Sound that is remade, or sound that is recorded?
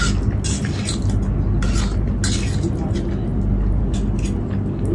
recorded